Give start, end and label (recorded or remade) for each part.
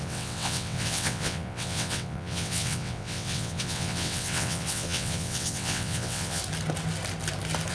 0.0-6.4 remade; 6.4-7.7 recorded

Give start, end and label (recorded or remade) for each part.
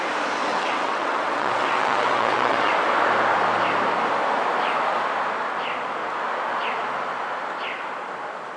0.0-0.5 recorded; 0.5-2.7 remade; 2.7-8.6 recorded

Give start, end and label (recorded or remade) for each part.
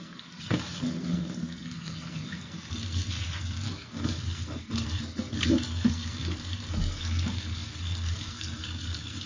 0.0-9.3 remade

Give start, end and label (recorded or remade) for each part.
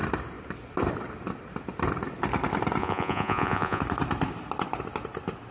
0.0-2.8 recorded; 2.8-3.8 remade; 3.8-5.5 recorded